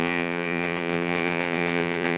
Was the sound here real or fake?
fake